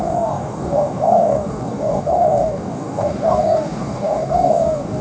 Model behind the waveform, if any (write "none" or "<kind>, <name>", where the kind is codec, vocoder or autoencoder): codec, DAC